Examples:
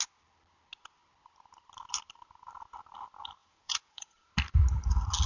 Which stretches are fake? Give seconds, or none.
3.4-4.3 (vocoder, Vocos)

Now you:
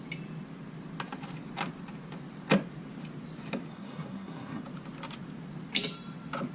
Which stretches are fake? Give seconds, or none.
3.7-4.6 (codec, SNAC)